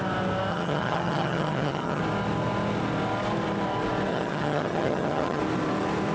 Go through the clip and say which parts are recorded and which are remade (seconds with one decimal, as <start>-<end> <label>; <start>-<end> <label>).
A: 0.0-0.5 recorded; 0.5-2.0 remade; 2.0-4.1 recorded; 4.1-5.4 remade; 5.4-6.1 recorded